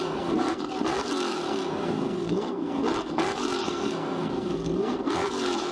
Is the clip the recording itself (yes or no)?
no